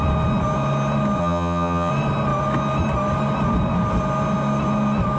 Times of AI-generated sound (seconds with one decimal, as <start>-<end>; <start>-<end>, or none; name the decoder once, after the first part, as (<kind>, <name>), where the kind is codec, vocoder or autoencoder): 1.2-1.9 (vocoder, HiFi-GAN)